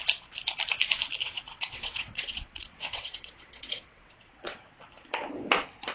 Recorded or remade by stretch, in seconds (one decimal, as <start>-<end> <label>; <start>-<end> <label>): 0.0-1.2 recorded; 1.2-4.7 remade; 4.7-5.9 recorded